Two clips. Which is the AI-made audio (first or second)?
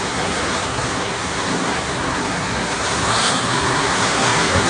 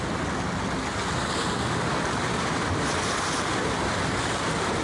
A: first